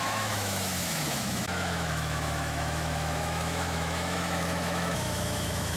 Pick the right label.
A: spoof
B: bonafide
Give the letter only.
A